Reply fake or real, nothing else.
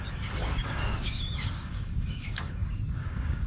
fake